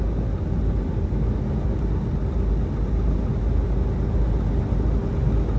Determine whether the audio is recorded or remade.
recorded